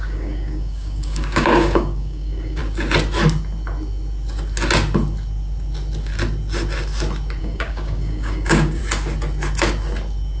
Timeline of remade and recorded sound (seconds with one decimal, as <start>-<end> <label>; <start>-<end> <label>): 0.0-2.6 remade; 2.6-7.4 recorded; 7.4-8.8 remade; 8.8-10.4 recorded